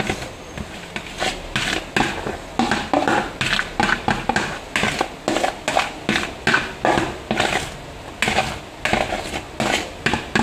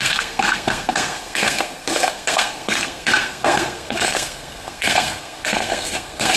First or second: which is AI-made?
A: second